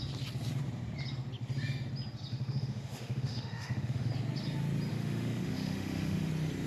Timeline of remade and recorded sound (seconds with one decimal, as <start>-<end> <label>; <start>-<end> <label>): 0.0-2.3 recorded; 2.3-4.1 remade; 4.1-4.9 recorded; 4.9-6.3 remade; 6.3-6.7 recorded